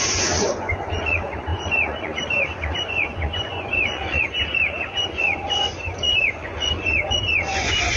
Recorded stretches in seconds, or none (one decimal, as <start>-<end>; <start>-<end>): none